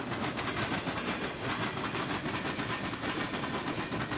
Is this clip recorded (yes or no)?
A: yes